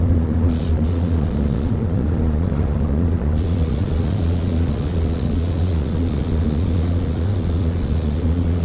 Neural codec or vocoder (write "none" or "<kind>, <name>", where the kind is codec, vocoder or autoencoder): vocoder, Vocos